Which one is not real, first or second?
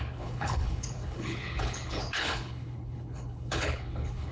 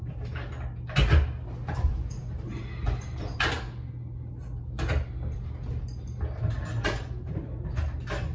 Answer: first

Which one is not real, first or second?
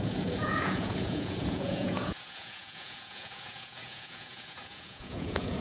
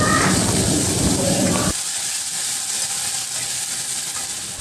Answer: first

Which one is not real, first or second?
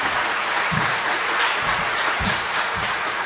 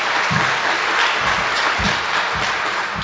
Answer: first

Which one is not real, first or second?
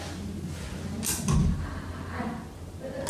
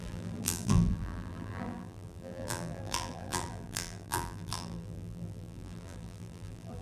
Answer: second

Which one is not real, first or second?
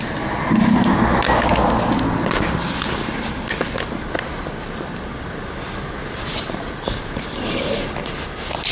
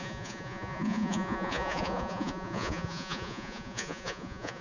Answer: second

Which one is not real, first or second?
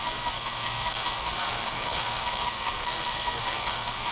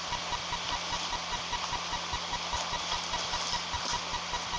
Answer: first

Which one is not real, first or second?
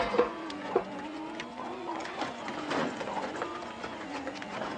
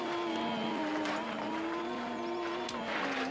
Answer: first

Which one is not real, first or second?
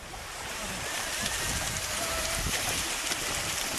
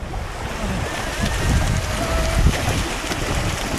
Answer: first